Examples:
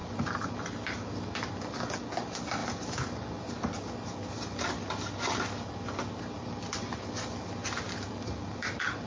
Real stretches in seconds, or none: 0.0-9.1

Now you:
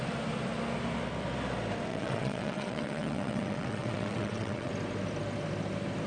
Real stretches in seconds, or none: 0.0-1.9; 4.7-6.1

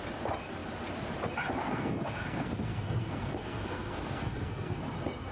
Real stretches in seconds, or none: 0.0-1.6; 4.8-5.3

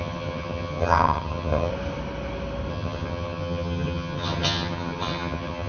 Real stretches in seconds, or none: 1.7-2.7

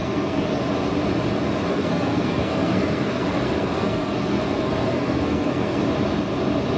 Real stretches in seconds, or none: 0.6-1.7; 5.8-6.8

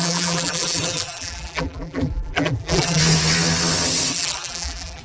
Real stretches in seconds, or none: 3.0-4.1